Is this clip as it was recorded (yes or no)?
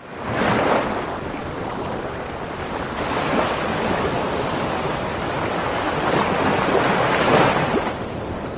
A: yes